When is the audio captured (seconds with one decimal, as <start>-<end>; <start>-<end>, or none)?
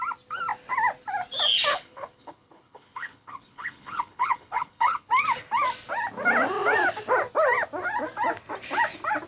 0.0-1.7; 5.1-9.3